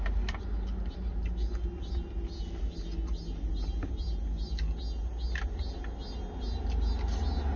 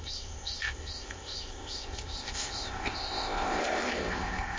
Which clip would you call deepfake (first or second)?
second